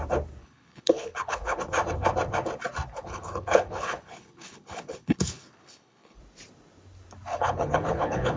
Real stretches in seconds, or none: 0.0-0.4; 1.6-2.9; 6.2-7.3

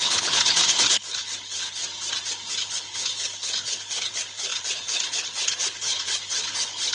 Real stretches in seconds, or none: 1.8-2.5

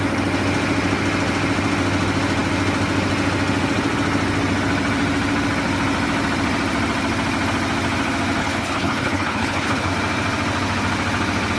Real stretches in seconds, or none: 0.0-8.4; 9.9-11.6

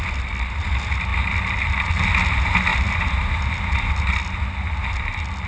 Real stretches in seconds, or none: 0.0-5.5

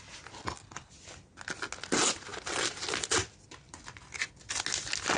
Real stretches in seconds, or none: 0.0-0.4; 0.9-5.2

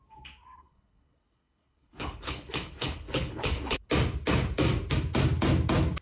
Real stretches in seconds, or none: 0.0-0.4; 3.9-6.0